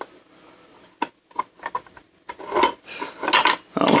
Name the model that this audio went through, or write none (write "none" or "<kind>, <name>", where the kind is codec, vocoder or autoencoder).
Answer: none